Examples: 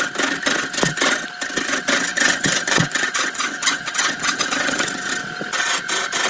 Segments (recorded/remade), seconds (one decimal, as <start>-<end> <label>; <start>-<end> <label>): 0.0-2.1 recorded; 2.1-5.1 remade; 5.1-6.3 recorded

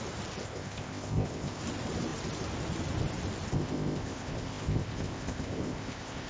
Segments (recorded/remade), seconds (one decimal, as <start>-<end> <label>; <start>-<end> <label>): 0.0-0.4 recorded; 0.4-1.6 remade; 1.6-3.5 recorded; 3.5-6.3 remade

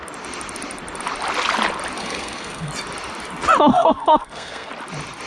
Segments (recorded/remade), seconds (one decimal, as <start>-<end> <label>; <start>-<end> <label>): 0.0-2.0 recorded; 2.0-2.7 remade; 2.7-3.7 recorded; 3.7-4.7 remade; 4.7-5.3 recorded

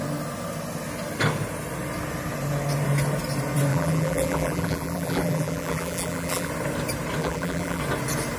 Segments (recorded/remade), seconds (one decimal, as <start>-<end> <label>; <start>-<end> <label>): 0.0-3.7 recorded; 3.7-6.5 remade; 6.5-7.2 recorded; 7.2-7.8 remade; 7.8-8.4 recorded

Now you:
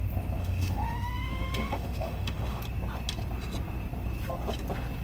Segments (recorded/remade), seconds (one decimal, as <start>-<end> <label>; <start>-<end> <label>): 0.0-0.4 recorded; 0.4-2.6 remade; 2.6-5.0 recorded

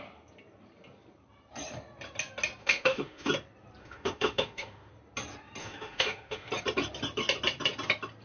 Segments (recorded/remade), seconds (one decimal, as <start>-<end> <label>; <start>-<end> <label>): 0.0-2.6 recorded; 2.6-3.3 remade; 3.3-3.8 recorded; 3.8-4.9 remade; 4.9-5.6 recorded; 5.6-6.5 remade; 6.5-8.2 recorded